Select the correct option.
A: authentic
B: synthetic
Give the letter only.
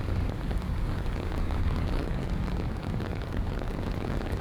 B